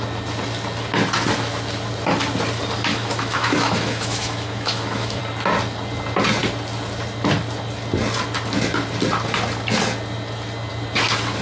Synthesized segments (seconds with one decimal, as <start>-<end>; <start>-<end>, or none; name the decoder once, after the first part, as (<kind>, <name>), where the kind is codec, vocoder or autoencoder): 2.9-5.2 (autoencoder, DAC-VAE)